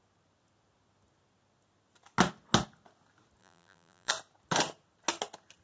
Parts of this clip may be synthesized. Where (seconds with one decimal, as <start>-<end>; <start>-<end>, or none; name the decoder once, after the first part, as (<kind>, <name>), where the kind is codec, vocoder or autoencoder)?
3.4-4.1 (vocoder, BigVGAN v2)